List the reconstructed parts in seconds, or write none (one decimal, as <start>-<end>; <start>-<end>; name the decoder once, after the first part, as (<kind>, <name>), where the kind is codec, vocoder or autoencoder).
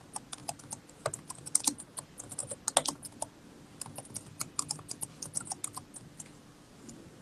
0.4-1.0 (vocoder, BigVGAN v2)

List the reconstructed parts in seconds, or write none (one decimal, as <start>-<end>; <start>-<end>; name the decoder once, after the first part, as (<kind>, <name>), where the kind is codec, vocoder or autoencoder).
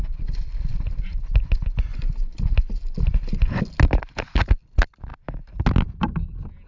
none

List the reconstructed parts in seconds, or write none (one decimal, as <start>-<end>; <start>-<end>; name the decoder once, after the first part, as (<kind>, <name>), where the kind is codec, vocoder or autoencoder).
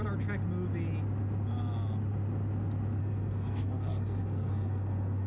3.0-5.3 (codec, SNAC)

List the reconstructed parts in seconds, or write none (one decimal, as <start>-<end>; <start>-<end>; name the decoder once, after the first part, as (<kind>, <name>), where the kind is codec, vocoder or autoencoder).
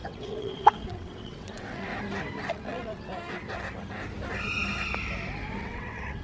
0.0-1.9 (vocoder, WaveNeXt); 2.5-3.1; 5.6-6.2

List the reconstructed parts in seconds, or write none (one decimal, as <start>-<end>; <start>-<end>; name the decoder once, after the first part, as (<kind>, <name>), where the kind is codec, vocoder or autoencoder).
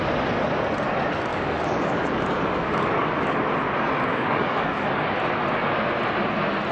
1.3-3.4 (codec, DAC); 4.1-5.0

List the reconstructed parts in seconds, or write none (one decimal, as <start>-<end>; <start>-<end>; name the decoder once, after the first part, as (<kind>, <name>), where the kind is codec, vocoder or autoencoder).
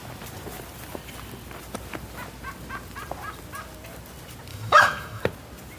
4.5-5.2 (autoencoder, DAC-VAE)